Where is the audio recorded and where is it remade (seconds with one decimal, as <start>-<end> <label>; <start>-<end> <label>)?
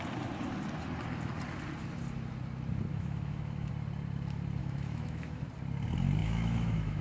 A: 0.0-2.9 recorded; 2.9-3.7 remade; 3.7-4.6 recorded; 4.6-5.4 remade; 5.4-6.2 recorded; 6.2-7.0 remade